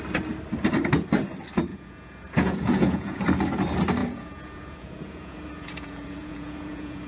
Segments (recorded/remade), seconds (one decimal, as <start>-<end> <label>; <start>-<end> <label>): 0.0-1.7 recorded; 1.7-3.2 remade; 3.2-4.0 recorded; 4.0-7.1 remade